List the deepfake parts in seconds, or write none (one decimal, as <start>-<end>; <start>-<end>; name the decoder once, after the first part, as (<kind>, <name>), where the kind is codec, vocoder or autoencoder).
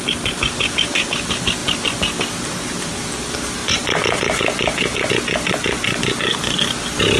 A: none